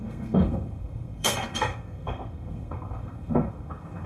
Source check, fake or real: fake